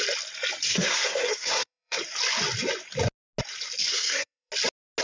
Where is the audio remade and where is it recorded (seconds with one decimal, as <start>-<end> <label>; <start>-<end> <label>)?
0.0-0.7 recorded; 0.7-2.0 remade; 2.0-3.9 recorded; 3.9-4.5 remade; 4.5-5.0 recorded